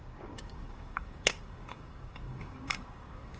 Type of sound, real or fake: fake